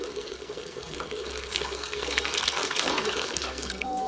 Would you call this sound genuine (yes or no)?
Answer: no